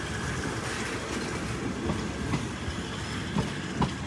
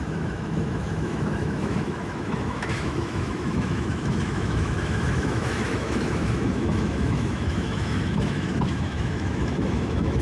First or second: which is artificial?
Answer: second